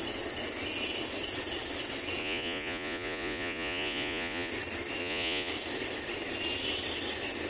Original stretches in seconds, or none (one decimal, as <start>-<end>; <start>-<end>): 0.0-2.2; 4.5-5.0; 5.5-7.5